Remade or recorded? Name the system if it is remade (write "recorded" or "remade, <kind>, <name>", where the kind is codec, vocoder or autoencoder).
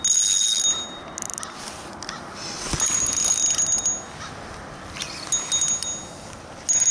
recorded